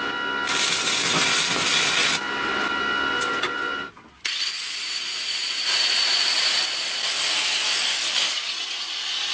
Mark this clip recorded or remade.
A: recorded